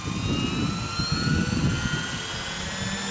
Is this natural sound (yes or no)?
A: yes